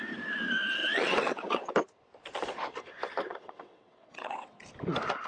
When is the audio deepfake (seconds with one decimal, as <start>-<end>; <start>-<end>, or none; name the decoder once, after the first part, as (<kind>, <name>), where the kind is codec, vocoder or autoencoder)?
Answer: 0.8-1.7 (vocoder, WaveNeXt); 3.3-4.6